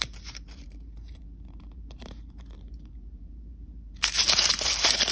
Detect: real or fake fake